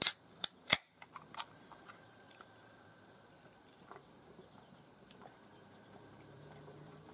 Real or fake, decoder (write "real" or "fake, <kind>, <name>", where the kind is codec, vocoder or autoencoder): fake, vocoder, BigVGAN v2